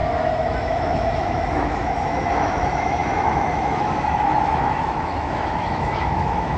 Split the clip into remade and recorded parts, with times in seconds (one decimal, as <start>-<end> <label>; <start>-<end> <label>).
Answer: 0.0-6.6 remade